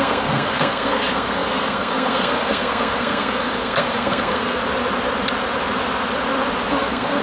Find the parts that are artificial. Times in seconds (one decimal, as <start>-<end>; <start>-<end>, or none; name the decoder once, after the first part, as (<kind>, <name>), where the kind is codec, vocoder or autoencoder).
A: 0.0-4.6 (codec, SNAC); 6.7-7.2